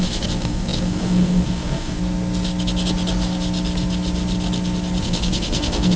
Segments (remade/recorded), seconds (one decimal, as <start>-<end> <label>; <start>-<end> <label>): 0.0-2.0 remade; 2.0-5.0 recorded; 5.0-6.0 remade